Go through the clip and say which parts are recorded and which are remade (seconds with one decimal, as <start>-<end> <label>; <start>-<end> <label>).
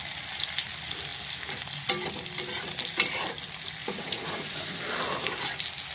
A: 0.0-3.8 recorded; 3.8-4.8 remade; 4.8-5.9 recorded